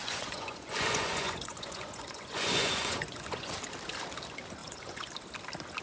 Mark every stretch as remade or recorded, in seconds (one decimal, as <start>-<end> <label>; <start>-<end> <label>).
0.0-3.5 remade; 3.5-4.6 recorded; 4.6-5.1 remade; 5.1-5.8 recorded